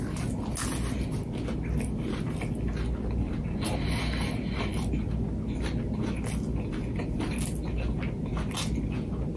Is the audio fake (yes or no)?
no